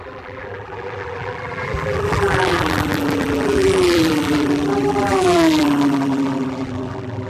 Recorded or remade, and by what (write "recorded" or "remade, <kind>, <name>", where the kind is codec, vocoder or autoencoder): remade, vocoder, BigVGAN v2